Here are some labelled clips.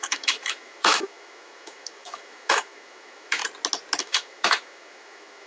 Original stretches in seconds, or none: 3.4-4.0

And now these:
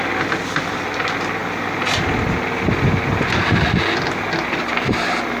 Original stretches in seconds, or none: 0.0-5.4

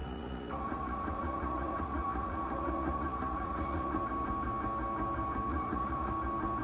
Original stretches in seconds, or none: 4.0-5.5; 6.1-6.6

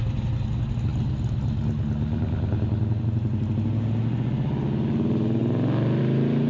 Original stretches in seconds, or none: 0.0-6.5

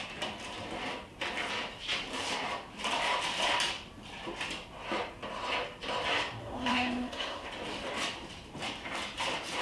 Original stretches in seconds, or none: 0.0-6.4; 7.5-9.6

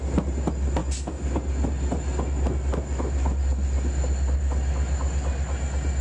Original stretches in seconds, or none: 0.0-6.0

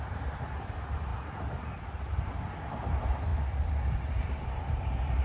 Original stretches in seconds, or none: 1.1-2.0

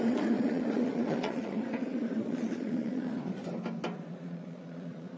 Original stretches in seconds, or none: 3.4-4.1